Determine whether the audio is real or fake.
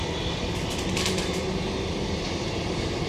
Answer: real